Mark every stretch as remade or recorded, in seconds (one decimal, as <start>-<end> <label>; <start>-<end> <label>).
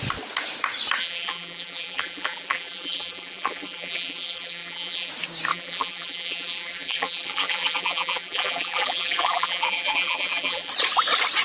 0.0-1.0 recorded; 1.0-5.1 remade; 5.1-5.5 recorded; 5.5-10.7 remade; 10.7-11.4 recorded